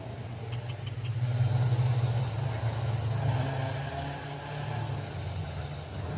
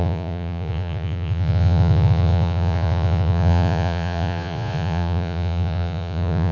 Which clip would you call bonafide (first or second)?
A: first